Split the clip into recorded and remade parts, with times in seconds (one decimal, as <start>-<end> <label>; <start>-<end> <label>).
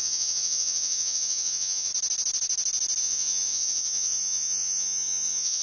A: 0.0-1.9 remade; 1.9-3.0 recorded; 3.0-5.6 remade